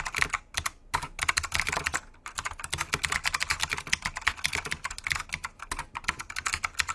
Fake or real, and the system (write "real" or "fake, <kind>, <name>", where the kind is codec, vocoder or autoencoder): real